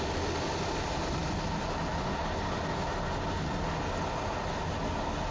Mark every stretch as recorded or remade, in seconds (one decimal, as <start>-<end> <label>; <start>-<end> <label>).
0.0-5.3 recorded